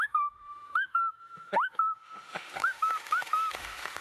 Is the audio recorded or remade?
remade